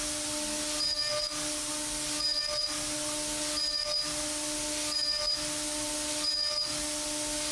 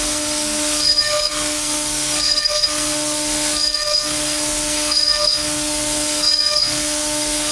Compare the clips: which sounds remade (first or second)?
second